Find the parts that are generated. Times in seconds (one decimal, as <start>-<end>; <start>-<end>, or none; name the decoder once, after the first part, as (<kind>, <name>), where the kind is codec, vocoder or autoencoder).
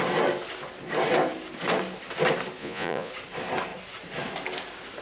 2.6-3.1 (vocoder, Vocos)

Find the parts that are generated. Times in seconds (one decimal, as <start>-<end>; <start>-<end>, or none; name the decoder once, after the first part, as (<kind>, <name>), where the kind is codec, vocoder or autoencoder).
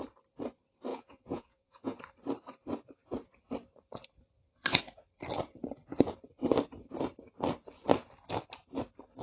0.9-2.0 (vocoder, Vocos)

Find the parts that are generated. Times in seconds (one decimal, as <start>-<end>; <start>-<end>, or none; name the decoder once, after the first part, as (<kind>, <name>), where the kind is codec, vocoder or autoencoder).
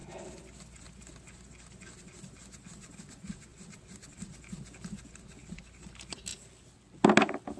none